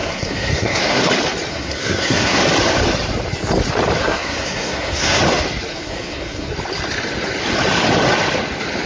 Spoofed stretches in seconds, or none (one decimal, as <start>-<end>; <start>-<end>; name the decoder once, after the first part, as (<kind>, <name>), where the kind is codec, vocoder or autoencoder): 0.0-1.0 (codec, SNAC); 1.5-2.4; 4.0-5.2; 5.7-6.5